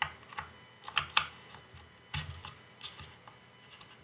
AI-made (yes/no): no